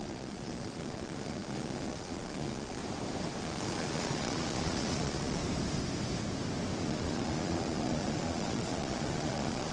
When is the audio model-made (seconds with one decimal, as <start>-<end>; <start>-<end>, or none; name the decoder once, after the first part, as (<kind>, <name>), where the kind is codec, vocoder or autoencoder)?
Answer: 0.0-2.8 (vocoder, Vocos); 3.4-5.4; 6.8-9.7